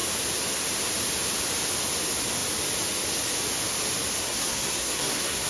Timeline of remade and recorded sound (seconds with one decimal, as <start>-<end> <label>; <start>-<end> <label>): 0.0-4.2 recorded; 4.2-5.5 remade

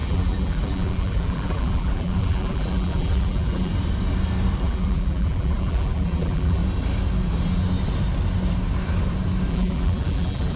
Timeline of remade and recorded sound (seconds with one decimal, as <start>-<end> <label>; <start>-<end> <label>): 0.0-3.7 remade; 3.7-4.6 recorded; 4.6-6.6 remade; 6.6-9.5 recorded; 9.5-10.6 remade

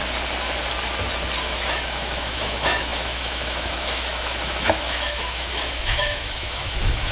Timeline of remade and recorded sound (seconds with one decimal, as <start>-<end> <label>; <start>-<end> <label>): 0.0-1.4 recorded; 1.4-7.1 remade

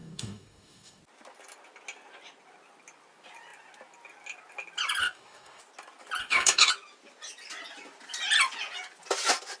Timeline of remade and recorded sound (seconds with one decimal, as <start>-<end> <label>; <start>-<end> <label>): 0.0-1.0 remade; 1.0-5.0 recorded; 5.0-5.6 remade; 5.6-6.2 recorded; 6.2-6.7 remade; 6.7-9.6 recorded

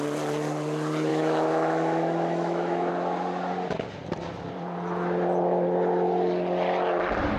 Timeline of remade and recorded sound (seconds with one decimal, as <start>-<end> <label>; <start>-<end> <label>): 0.0-1.1 recorded; 1.1-2.9 remade; 2.9-7.4 recorded